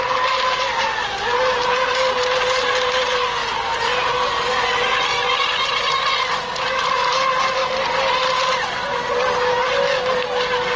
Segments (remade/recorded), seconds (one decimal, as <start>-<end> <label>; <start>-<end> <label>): 0.0-10.8 recorded